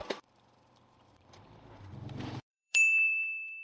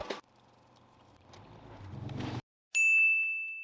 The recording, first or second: second